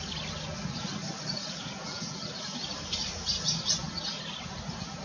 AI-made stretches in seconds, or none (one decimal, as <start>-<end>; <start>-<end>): 1.4-2.2